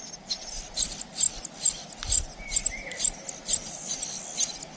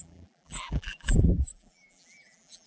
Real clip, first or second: first